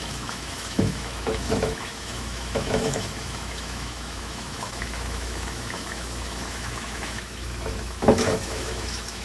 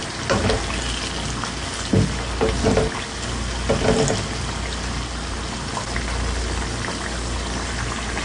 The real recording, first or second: second